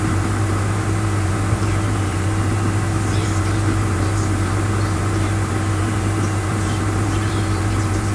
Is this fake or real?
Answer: fake